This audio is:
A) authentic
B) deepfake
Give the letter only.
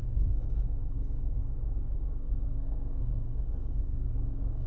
B